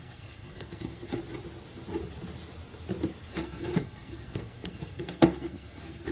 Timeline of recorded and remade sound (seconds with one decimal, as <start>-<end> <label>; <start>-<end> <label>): 0.0-1.2 remade; 1.2-3.2 recorded; 3.2-6.1 remade